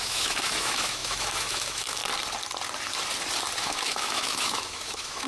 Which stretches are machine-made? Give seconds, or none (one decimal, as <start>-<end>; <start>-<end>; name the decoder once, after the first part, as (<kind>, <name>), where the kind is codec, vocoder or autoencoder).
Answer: 0.0-2.0 (autoencoder, DAC-VAE); 3.6-5.3